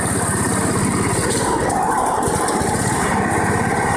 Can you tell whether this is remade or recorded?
recorded